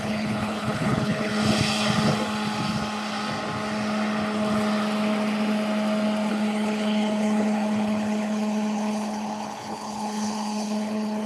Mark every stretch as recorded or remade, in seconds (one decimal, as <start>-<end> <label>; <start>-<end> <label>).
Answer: 0.0-1.3 remade; 1.3-6.3 recorded; 6.3-11.3 remade